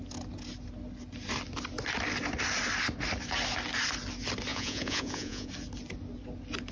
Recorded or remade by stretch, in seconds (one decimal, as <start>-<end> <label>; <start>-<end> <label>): 0.0-4.5 recorded; 4.5-5.5 remade; 5.5-6.7 recorded